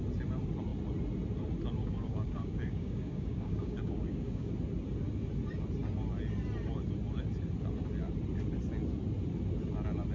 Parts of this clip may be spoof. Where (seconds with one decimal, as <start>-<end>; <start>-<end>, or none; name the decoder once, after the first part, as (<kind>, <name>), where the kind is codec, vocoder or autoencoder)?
1.8-4.5 (codec, DAC)